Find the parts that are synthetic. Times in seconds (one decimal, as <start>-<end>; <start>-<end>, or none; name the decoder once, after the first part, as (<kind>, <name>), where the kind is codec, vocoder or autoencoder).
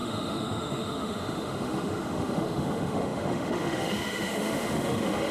0.0-5.3 (autoencoder, DAC-VAE)